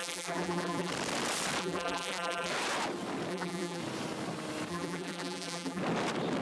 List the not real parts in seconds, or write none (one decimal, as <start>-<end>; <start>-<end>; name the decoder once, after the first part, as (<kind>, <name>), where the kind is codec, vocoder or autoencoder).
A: 0.0-0.9 (vocoder, BigVGAN v2); 1.6-2.5; 3.3-3.8; 4.7-5.8